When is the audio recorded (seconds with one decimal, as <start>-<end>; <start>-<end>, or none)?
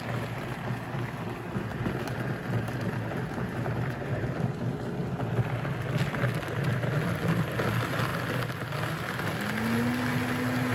0.0-1.7; 4.4-10.7